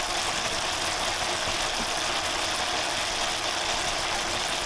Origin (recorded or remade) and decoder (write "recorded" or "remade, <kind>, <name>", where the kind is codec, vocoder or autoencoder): recorded